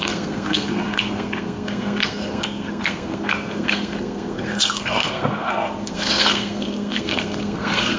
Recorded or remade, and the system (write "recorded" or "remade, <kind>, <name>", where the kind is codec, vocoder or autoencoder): remade, codec, SNAC